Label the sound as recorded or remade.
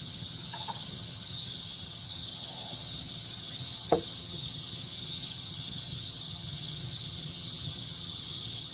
remade